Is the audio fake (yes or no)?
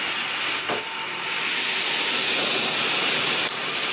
no